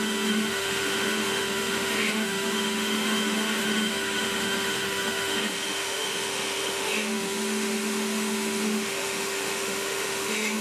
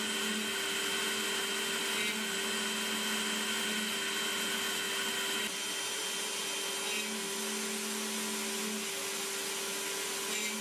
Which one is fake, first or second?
first